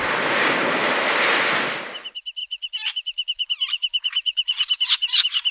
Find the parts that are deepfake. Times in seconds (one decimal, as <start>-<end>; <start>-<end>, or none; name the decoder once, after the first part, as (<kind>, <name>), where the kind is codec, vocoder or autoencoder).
2.4-5.5 (vocoder, BigVGAN v2)